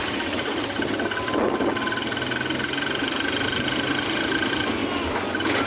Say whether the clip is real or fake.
real